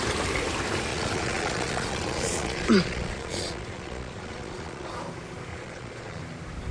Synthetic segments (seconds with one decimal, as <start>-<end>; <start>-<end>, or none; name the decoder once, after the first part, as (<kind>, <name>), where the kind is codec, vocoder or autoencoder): 0.9-4.9 (vocoder, Vocos); 5.5-6.2